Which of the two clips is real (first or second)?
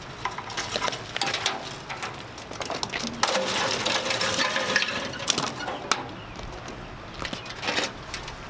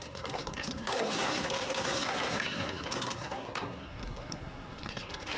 first